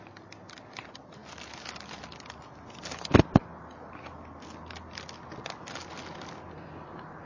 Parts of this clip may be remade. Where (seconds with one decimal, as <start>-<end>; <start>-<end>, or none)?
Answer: none